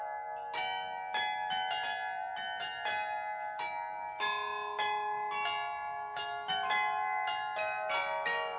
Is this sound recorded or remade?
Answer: recorded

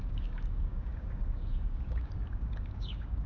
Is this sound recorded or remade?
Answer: remade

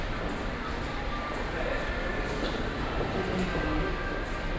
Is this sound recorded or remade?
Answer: recorded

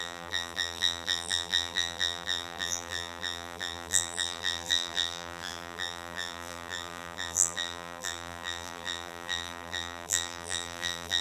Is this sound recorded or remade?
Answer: remade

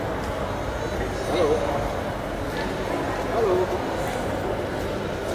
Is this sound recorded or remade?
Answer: recorded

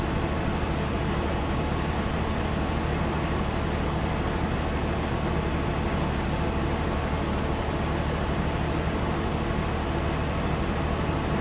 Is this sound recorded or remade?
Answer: recorded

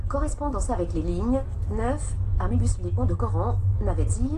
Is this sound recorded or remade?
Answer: recorded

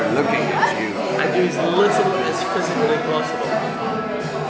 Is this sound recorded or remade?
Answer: recorded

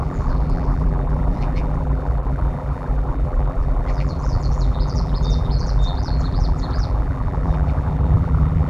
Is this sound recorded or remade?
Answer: remade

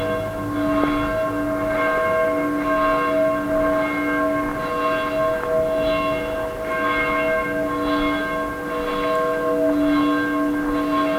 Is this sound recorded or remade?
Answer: recorded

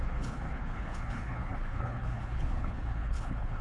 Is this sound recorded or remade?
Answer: remade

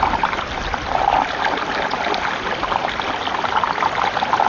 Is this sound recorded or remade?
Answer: recorded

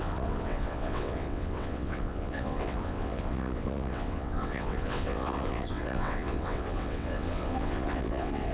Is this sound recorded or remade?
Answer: remade